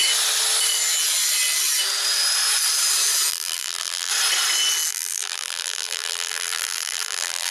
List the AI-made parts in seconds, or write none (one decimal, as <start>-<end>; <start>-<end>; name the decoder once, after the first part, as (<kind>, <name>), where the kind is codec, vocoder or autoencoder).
3.3-4.1 (vocoder, BigVGAN v2); 4.9-7.5